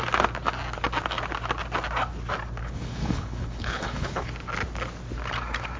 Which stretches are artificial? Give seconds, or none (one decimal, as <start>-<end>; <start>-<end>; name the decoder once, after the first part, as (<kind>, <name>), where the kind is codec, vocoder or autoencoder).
2.6-4.3 (codec, HILCodec)